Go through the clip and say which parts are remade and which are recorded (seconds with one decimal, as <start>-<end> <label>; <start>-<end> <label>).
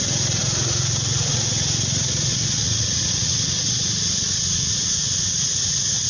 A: 0.0-6.1 remade